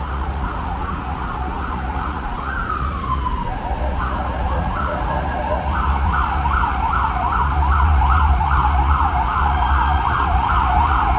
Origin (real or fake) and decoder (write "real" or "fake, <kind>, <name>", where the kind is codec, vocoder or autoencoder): fake, vocoder, Vocos